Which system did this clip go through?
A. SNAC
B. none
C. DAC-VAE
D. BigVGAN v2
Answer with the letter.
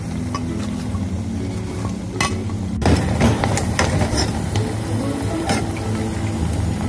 B